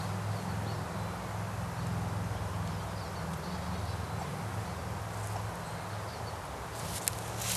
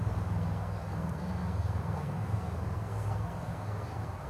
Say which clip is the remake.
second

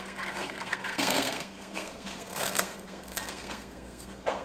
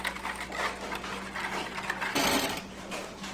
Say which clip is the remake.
first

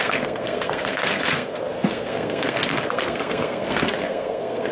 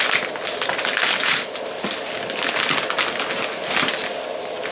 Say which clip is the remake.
first